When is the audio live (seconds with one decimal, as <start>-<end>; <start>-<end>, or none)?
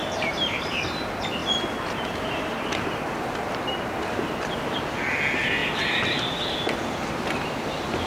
0.8-8.1